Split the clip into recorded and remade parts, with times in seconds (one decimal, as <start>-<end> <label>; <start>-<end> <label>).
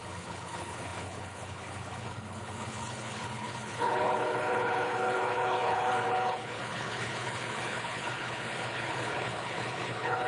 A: 0.0-10.3 remade